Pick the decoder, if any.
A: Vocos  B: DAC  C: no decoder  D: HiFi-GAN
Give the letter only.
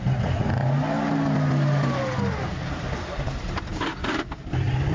C